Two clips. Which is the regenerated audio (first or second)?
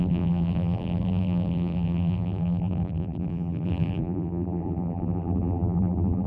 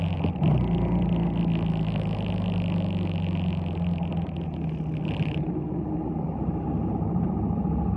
first